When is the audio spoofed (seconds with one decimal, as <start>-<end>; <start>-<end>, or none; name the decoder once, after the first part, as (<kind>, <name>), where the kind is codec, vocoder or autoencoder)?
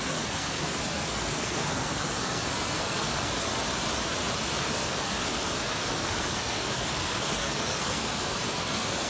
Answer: 0.0-3.5 (codec, SNAC); 4.6-9.1